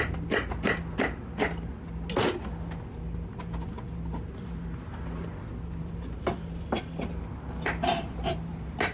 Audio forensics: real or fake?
real